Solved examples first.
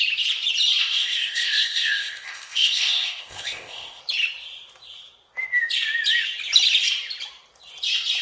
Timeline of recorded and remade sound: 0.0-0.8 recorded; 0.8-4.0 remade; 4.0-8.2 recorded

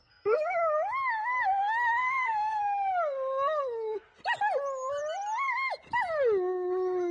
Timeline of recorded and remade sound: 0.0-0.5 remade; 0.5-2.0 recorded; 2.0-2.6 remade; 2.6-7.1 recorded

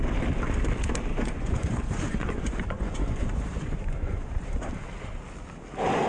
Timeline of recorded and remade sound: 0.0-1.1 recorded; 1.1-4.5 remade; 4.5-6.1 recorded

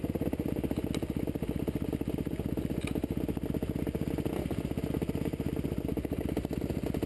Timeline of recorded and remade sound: 0.0-7.1 recorded

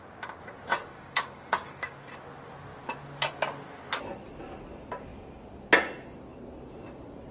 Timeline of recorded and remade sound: 0.0-0.9 recorded; 0.9-2.1 remade; 2.1-7.3 recorded

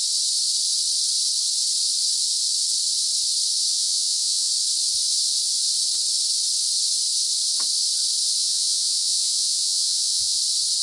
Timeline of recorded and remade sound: 0.0-3.7 recorded; 3.7-4.5 remade; 4.5-8.4 recorded; 8.4-10.4 remade; 10.4-10.8 recorded